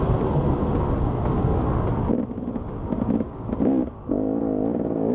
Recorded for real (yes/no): yes